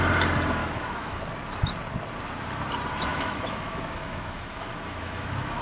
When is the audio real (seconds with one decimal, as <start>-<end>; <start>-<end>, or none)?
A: 0.0-0.6; 1.2-3.1